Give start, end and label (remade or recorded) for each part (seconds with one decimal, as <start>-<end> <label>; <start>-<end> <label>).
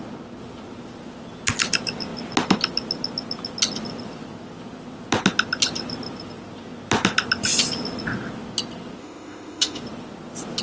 0.0-9.0 recorded; 9.0-9.8 remade; 9.8-10.6 recorded